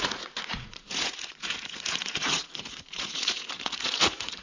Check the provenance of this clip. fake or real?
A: fake